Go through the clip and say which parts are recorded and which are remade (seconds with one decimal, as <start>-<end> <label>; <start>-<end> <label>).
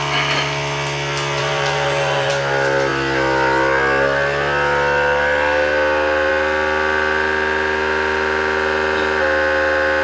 0.0-1.4 recorded; 1.4-2.3 remade; 2.3-10.0 recorded